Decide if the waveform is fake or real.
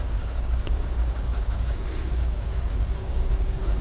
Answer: fake